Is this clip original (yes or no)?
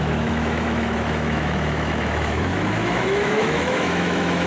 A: no